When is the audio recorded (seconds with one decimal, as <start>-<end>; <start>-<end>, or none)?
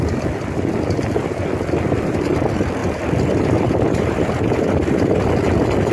0.0-2.8; 5.3-5.9